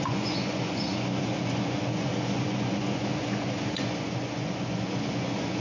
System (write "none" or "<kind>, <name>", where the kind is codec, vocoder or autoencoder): vocoder, Vocos